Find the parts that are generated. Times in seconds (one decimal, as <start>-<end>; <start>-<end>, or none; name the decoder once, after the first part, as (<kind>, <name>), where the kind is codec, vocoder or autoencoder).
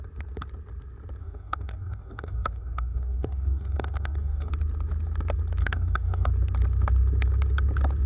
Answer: 1.2-4.5 (codec, DAC); 5.6-6.3